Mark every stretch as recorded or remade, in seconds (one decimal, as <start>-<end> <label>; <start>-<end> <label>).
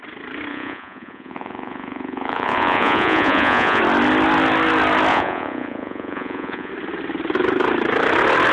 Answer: 0.0-0.5 recorded; 0.5-3.8 remade; 3.8-5.1 recorded; 5.1-6.7 remade; 6.7-8.5 recorded